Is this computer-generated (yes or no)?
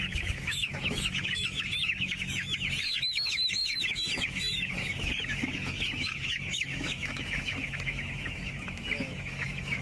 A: yes